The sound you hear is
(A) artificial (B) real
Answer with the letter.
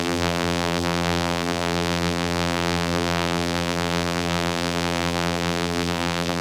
A